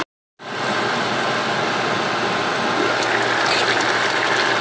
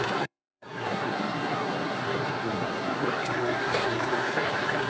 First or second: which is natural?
first